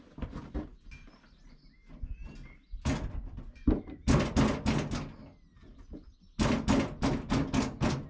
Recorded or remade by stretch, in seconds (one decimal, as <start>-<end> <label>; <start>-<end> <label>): 0.0-8.1 recorded